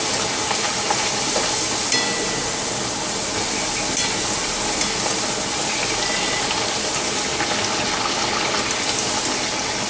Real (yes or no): yes